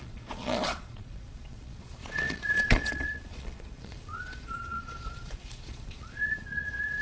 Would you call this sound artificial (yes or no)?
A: yes